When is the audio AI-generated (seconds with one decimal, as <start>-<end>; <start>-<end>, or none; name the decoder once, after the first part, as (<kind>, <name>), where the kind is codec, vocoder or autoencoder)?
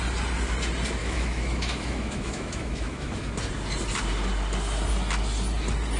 1.0-3.3 (autoencoder, DAC-VAE)